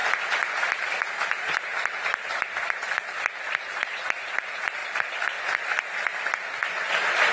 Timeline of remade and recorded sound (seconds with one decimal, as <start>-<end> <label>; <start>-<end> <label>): 0.0-4.8 remade; 4.8-5.6 recorded; 5.6-6.6 remade; 6.6-7.3 recorded